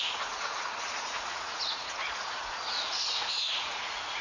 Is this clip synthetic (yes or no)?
yes